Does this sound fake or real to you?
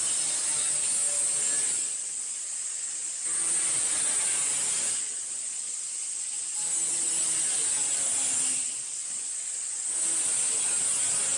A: real